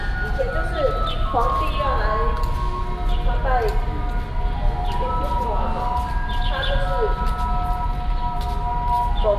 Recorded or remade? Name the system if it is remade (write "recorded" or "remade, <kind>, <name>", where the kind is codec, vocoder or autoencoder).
recorded